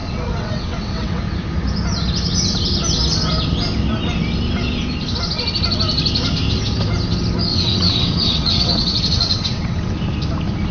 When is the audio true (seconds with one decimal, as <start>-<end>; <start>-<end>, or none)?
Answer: 1.2-7.5; 9.9-10.7